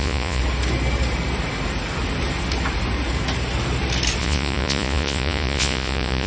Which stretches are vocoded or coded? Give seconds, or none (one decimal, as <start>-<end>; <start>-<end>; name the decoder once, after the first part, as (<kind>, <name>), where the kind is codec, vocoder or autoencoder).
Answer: 0.0-0.4 (vocoder, Vocos); 4.2-6.3